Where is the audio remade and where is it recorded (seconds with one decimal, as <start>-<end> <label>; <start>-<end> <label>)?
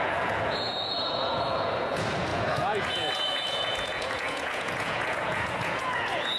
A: 0.0-6.4 remade